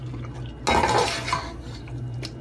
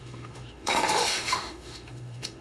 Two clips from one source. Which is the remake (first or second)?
second